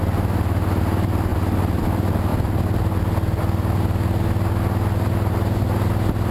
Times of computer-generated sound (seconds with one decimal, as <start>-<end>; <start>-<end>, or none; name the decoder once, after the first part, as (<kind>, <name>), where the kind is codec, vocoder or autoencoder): none